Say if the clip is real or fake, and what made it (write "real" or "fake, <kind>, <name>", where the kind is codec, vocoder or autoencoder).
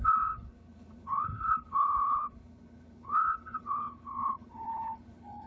fake, codec, HILCodec